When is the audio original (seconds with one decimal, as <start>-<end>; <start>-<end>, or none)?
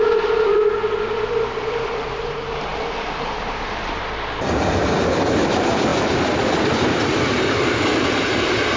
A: none